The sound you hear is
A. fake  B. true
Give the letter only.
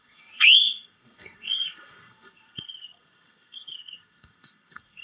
A